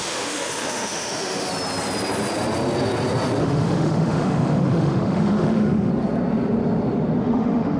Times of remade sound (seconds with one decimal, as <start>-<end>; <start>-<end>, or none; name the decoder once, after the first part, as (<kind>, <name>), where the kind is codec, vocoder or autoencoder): 0.0-1.5 (autoencoder, DAC-VAE); 3.4-5.9; 7.2-7.8